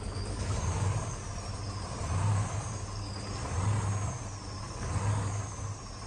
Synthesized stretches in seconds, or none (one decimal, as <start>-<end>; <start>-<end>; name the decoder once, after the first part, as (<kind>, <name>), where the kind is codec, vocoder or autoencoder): 0.0-1.2 (codec, DAC); 2.3-3.4; 4.6-5.4